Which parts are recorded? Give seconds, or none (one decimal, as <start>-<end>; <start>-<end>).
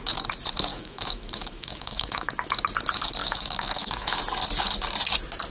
0.0-0.7; 2.3-3.2; 4.2-5.5